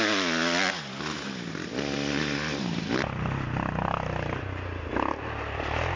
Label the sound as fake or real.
real